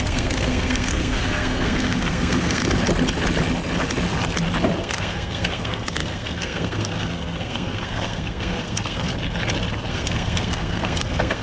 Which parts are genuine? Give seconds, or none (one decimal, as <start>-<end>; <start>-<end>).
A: 2.6-4.8; 9.1-9.9